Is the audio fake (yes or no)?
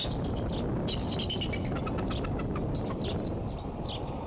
no